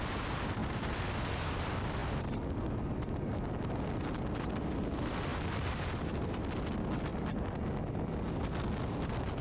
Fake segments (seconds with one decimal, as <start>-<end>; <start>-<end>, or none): 5.3-6.4

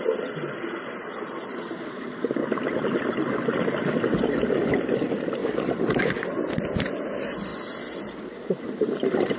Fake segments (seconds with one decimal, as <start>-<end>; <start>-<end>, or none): 0.0-2.4; 4.7-7.5; 8.0-9.4

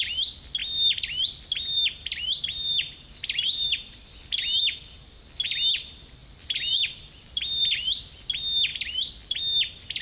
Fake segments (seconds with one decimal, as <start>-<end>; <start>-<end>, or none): 0.6-4.0; 6.2-8.1; 8.7-9.4

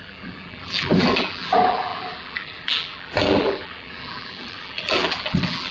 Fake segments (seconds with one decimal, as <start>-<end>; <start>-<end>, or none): 0.0-5.7